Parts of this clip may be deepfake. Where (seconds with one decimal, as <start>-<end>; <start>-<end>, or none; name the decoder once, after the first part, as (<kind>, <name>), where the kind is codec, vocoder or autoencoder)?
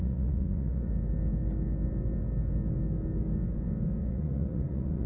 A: 0.0-0.9 (vocoder, Vocos); 4.0-5.1